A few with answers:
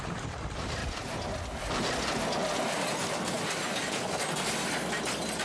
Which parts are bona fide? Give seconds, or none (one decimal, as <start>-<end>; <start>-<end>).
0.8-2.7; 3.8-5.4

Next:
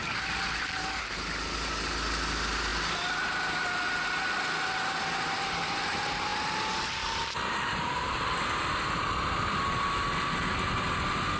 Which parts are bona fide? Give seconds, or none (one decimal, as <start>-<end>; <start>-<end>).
0.0-11.4

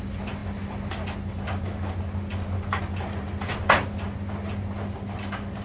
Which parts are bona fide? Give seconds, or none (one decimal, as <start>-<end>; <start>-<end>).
0.0-5.6

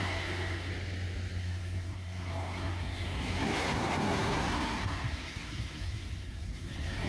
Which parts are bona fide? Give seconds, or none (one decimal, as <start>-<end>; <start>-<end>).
0.7-1.4

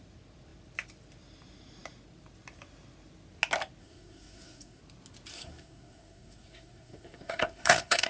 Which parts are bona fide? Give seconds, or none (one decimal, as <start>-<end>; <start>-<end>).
0.0-3.8; 4.8-5.3